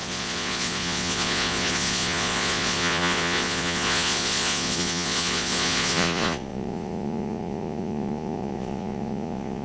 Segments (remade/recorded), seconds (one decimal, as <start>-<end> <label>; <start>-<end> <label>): 0.0-9.6 remade